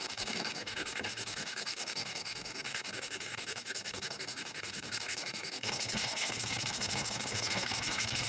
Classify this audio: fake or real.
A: fake